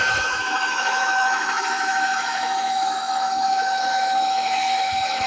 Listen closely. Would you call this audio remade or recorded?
remade